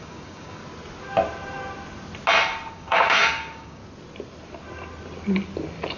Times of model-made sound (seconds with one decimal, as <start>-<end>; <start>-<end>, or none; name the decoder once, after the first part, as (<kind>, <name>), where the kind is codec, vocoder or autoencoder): 0.0-0.6 (codec, DAC); 2.7-3.8